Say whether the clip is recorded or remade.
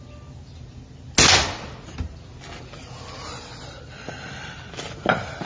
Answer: recorded